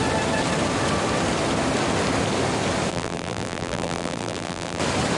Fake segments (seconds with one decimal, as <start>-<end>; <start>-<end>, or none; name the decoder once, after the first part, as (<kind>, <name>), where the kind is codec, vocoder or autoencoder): 2.9-4.8 (vocoder, BigVGAN v2)

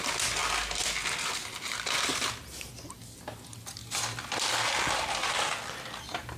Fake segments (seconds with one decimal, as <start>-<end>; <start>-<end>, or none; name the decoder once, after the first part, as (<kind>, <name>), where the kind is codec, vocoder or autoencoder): 3.8-5.7 (vocoder, BigVGAN v2)